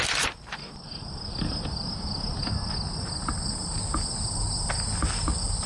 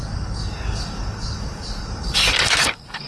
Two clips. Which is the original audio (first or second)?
first